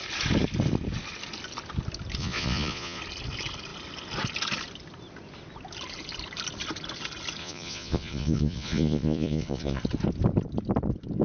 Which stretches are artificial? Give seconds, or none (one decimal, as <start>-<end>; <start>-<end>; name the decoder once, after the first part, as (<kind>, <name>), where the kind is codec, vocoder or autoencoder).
2.2-3.0 (vocoder, Vocos); 7.4-9.8